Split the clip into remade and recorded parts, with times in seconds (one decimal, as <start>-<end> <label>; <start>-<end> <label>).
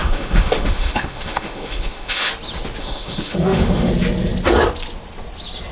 0.0-2.3 remade; 2.3-2.8 recorded; 2.8-3.9 remade; 3.9-5.7 recorded